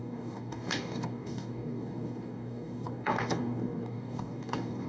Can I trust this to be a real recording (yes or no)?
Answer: no